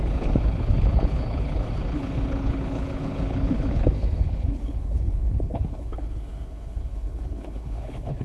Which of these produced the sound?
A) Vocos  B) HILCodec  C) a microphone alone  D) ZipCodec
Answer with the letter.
B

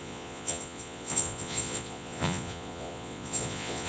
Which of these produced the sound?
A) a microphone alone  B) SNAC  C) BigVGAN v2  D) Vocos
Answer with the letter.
D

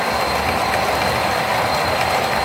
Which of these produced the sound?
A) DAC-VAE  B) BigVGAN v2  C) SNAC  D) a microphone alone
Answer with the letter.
D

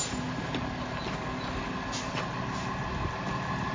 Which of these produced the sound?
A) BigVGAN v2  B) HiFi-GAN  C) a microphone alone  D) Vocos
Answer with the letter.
C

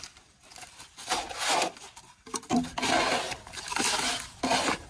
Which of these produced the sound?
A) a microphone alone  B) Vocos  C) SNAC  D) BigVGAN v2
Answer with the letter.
A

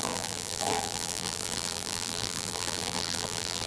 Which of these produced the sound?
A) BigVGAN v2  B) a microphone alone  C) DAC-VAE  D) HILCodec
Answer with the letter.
A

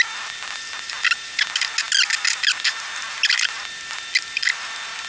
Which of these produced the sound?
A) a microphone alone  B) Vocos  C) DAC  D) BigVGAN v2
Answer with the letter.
A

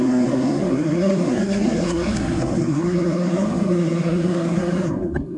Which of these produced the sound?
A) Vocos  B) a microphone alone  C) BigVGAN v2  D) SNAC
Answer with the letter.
D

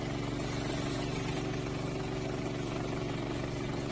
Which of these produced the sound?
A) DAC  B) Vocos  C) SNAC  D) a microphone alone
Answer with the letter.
D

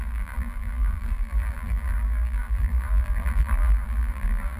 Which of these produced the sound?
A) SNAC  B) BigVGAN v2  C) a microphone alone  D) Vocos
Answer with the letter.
B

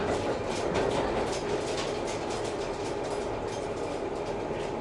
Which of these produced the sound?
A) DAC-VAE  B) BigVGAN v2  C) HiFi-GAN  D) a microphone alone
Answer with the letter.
D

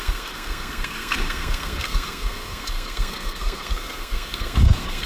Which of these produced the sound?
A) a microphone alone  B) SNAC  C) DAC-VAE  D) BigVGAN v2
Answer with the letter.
B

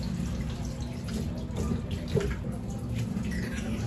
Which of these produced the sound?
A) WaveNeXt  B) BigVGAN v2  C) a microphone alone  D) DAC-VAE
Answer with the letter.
C